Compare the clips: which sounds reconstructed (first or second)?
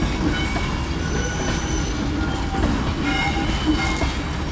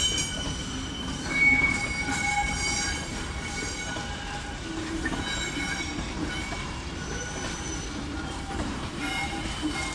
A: second